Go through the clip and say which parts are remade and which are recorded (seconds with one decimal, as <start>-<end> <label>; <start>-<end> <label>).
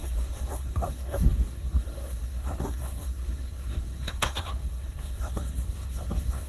0.0-6.5 remade